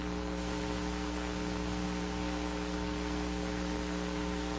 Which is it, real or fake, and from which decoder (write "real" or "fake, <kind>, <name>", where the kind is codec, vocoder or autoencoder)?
fake, codec, SNAC